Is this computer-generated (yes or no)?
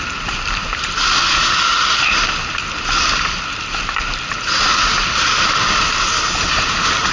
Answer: no